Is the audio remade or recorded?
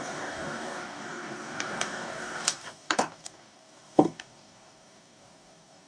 remade